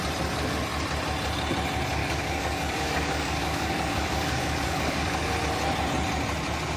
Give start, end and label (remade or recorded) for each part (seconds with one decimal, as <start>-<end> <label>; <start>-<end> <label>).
0.0-2.0 recorded; 2.0-5.3 remade; 5.3-6.8 recorded

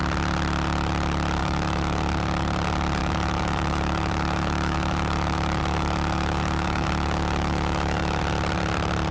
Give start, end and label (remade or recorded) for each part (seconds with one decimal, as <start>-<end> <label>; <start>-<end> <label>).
0.0-1.4 recorded; 1.4-2.0 remade; 2.0-3.0 recorded; 3.0-8.2 remade; 8.2-9.1 recorded

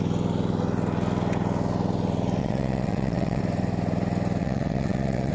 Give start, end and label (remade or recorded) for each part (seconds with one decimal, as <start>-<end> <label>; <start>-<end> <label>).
0.0-2.4 recorded; 2.4-3.4 remade; 3.4-4.4 recorded; 4.4-5.3 remade

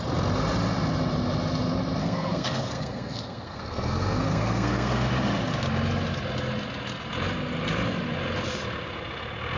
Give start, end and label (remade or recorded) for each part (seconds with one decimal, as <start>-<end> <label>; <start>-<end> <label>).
0.0-2.0 recorded; 2.0-5.1 remade; 5.1-9.6 recorded

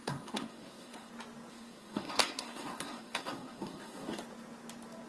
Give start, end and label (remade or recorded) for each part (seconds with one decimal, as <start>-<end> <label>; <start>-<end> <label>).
0.0-1.1 remade; 1.1-1.5 recorded; 1.5-4.2 remade; 4.2-5.1 recorded

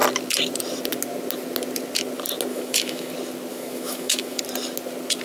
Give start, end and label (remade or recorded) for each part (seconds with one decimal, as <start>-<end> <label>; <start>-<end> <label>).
0.0-2.5 recorded; 2.5-3.1 remade; 3.1-3.5 recorded; 3.5-4.4 remade; 4.4-5.2 recorded

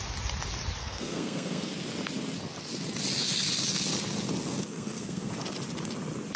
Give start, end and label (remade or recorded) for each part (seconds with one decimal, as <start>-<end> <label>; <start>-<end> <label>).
0.0-0.8 recorded; 0.8-1.7 remade; 1.7-4.5 recorded; 4.5-5.3 remade; 5.3-6.4 recorded

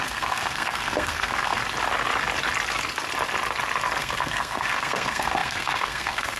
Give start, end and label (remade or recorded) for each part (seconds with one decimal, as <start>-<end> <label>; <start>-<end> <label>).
0.0-1.6 remade; 1.6-4.0 recorded; 4.0-6.4 remade